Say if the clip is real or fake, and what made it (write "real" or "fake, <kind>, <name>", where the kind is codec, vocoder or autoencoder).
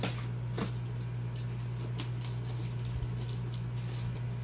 real